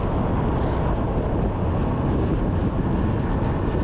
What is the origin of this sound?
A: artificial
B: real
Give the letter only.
B